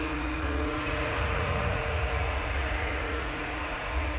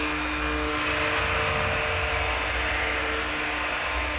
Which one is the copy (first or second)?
first